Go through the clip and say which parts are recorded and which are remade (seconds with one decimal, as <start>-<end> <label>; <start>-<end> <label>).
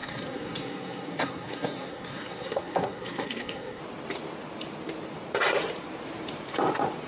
0.0-3.8 remade; 3.8-7.1 recorded